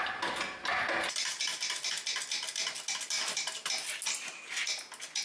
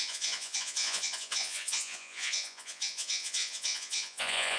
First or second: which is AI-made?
second